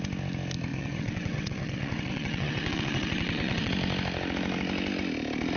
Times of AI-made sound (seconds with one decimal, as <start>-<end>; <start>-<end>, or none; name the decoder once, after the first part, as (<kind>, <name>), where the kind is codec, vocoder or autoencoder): 0.7-3.7 (vocoder, WaveNeXt)